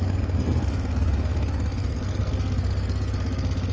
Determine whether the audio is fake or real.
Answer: fake